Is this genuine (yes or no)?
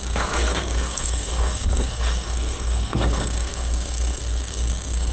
no